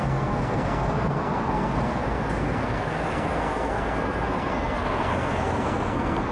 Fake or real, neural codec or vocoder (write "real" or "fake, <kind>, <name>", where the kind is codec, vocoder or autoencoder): fake, codec, SNAC